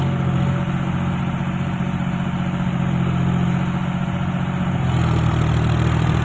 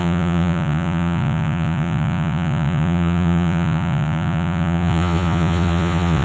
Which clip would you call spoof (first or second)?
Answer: second